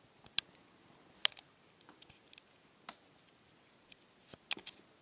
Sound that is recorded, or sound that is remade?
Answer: recorded